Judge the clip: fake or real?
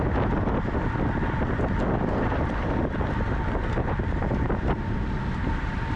real